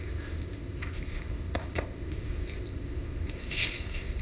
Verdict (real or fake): fake